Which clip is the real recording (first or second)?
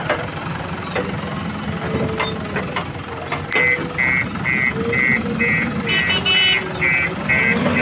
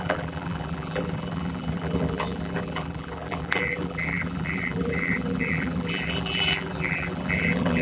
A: first